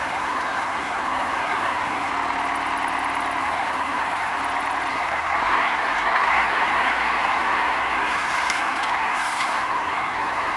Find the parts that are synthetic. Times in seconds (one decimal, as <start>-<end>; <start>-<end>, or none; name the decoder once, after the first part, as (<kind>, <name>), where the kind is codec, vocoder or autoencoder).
0.0-2.1 (codec, SNAC); 3.4-4.4; 4.9-10.6